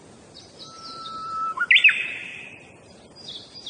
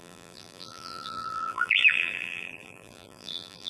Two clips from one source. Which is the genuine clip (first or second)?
first